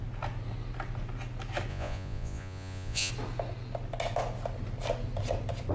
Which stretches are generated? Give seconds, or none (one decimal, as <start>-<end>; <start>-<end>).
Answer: 1.7-3.1